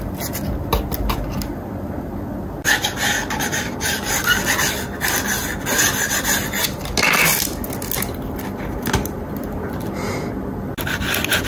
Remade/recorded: recorded